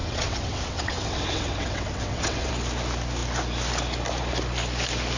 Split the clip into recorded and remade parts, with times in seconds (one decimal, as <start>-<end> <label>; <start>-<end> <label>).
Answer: 0.0-2.5 remade; 2.5-5.2 recorded